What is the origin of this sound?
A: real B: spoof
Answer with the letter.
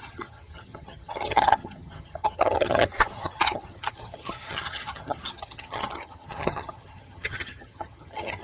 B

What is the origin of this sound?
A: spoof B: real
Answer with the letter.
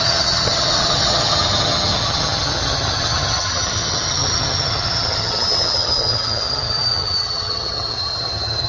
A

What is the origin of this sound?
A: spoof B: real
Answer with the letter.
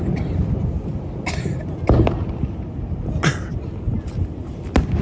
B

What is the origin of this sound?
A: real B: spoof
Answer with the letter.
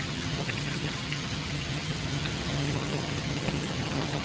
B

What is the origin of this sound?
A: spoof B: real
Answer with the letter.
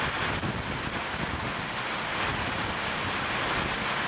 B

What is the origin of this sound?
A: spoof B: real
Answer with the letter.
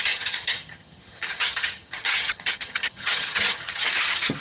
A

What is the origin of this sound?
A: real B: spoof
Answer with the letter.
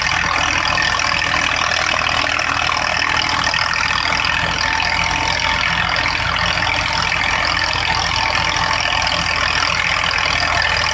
A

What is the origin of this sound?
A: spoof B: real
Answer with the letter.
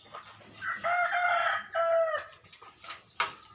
B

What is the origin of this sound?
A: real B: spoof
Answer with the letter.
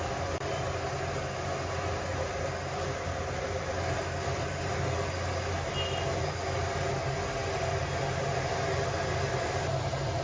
A